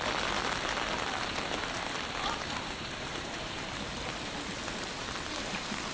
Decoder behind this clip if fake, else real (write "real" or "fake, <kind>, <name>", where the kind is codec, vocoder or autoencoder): real